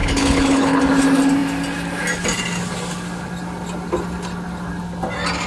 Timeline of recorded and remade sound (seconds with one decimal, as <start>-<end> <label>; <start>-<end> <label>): 0.0-0.8 remade; 0.8-5.5 recorded